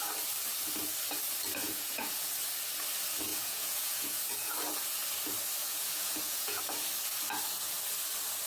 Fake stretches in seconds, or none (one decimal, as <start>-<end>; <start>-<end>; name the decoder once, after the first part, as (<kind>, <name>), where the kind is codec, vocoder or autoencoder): 1.6-2.3 (vocoder, Vocos); 3.3-4.6; 5.6-6.6